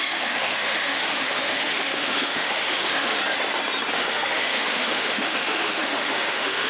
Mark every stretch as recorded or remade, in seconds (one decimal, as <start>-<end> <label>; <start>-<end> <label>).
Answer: 0.0-3.2 remade; 3.2-3.9 recorded; 3.9-6.7 remade